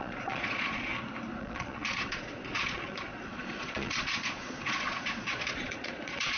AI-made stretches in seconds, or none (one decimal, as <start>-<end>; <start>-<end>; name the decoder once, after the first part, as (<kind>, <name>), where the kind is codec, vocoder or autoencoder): 0.0-0.9 (vocoder, Vocos); 1.4-6.4